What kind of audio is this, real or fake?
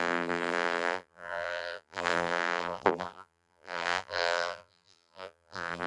fake